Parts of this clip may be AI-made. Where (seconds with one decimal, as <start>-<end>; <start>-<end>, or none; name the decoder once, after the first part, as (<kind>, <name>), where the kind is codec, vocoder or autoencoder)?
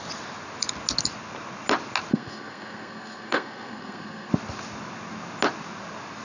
2.1-4.3 (codec, SNAC)